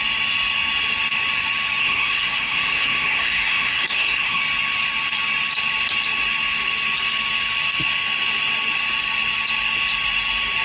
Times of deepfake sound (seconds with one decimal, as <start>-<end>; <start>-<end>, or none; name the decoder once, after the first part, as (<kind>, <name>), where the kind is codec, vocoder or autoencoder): 1.8-4.4 (codec, SNAC)